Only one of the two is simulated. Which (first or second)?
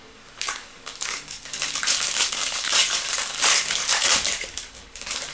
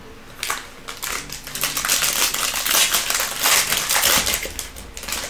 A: first